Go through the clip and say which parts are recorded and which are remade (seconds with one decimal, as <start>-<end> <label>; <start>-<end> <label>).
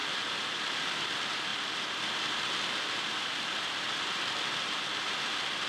0.0-5.7 remade